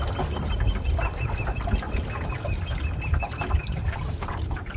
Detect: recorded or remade recorded